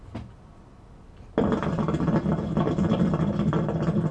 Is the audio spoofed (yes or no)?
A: no